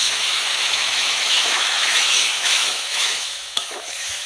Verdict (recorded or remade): remade